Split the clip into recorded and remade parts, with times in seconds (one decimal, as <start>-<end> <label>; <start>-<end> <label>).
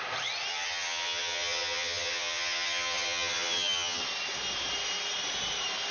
0.0-0.5 recorded; 0.5-4.0 remade; 4.0-5.9 recorded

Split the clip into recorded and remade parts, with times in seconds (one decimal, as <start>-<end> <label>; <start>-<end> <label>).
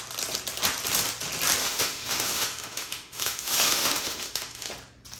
0.0-1.6 recorded; 1.6-4.7 remade; 4.7-5.2 recorded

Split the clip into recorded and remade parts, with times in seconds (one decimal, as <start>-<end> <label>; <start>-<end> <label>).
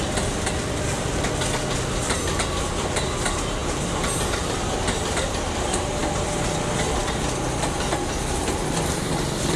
0.0-9.6 recorded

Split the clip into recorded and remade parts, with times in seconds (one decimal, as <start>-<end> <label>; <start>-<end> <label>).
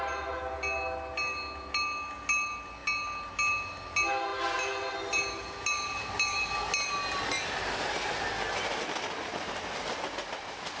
0.0-10.8 recorded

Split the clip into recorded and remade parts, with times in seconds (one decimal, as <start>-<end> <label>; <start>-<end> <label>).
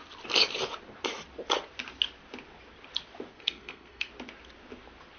0.0-3.3 recorded; 3.3-4.1 remade; 4.1-5.2 recorded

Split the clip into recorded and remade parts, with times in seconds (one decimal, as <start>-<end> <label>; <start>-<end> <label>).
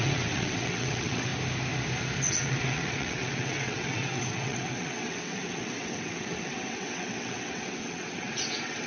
0.0-1.3 remade; 1.3-2.3 recorded; 2.3-8.9 remade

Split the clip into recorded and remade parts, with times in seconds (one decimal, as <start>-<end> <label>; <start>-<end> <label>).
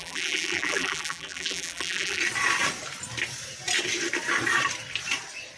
0.0-2.2 remade; 2.2-5.6 recorded